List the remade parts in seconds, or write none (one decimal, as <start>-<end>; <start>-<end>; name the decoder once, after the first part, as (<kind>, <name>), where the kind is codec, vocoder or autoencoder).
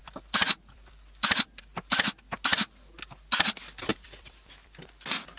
0.0-1.6 (vocoder, BigVGAN v2); 3.9-4.5